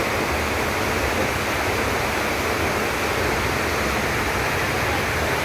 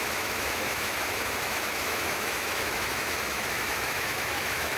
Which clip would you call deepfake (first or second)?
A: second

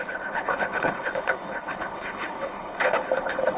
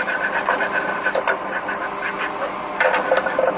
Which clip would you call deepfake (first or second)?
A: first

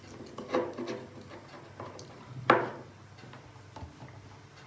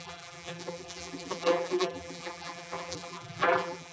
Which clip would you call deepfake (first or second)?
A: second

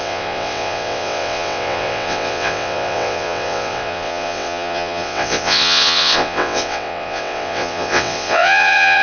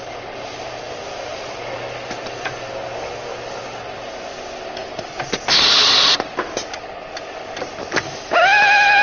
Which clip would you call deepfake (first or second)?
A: first